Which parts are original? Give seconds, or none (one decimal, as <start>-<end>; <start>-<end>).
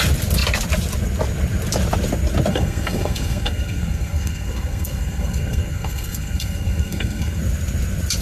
0.0-2.5; 7.4-8.2